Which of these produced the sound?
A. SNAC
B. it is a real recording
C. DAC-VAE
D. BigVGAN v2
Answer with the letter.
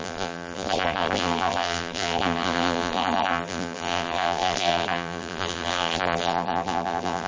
D